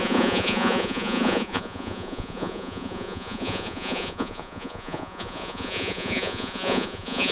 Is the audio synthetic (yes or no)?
yes